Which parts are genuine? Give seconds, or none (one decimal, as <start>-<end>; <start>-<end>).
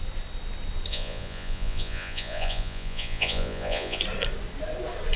0.0-0.9; 4.0-5.2